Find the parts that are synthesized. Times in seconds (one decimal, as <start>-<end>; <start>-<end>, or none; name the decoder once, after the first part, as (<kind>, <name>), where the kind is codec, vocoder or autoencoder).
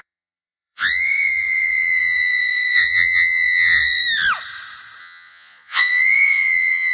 0.0-4.0 (vocoder, Vocos); 5.0-6.9